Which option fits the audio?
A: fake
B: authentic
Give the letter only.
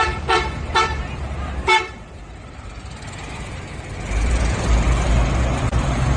A